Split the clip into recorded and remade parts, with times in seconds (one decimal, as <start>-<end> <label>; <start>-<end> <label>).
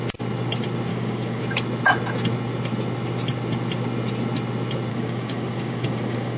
0.0-0.9 recorded; 0.9-1.4 remade; 1.4-4.9 recorded; 4.9-6.4 remade